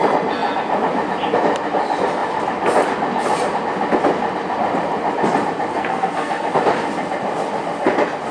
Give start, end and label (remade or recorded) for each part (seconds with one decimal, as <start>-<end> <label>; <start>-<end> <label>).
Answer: 0.0-5.7 recorded; 5.7-6.5 remade; 6.5-8.3 recorded